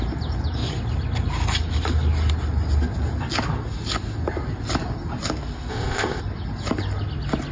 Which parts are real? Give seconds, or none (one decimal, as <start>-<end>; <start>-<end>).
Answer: 0.0-5.7; 6.2-7.5